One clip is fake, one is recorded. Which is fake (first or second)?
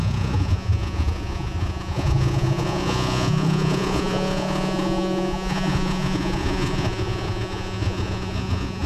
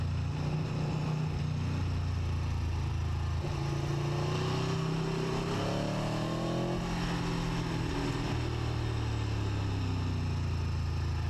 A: first